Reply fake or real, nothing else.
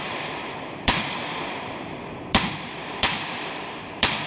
fake